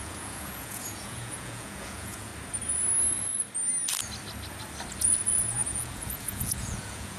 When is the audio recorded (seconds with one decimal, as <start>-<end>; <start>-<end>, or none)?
2.3-4.9